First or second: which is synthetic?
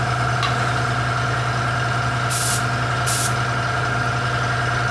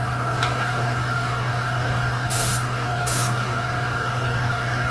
second